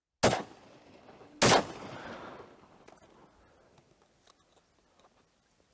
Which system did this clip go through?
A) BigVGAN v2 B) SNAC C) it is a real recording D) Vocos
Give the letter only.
C